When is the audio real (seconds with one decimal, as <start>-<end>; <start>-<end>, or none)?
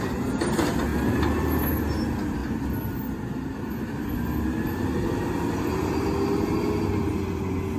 0.0-7.8